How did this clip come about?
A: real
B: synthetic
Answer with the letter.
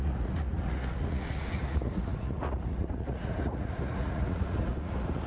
B